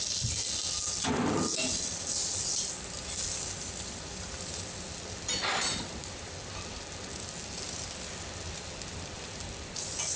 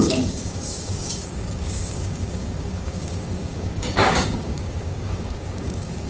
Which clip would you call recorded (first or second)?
first